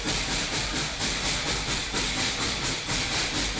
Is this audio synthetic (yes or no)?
no